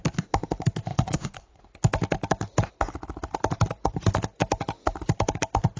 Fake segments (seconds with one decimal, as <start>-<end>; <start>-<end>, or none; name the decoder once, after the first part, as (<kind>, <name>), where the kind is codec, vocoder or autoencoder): 0.9-1.6 (vocoder, WaveNeXt)